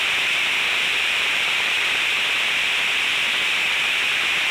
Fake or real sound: fake